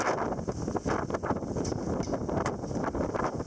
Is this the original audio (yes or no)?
yes